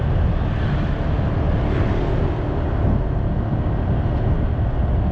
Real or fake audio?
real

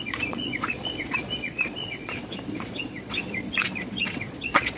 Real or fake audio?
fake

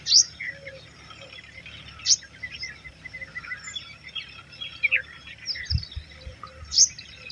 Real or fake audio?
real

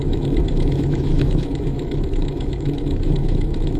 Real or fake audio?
fake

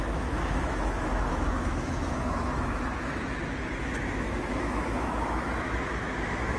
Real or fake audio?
fake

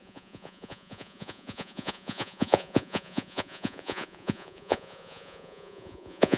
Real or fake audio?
fake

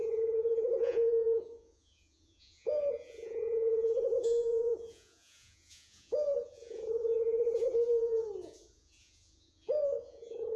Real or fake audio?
fake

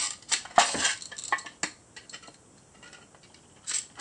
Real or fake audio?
real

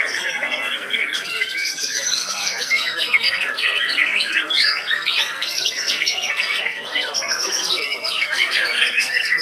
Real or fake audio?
fake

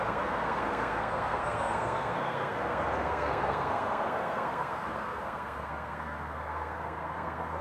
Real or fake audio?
fake